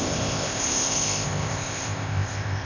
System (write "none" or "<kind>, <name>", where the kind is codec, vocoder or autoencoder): codec, ZipCodec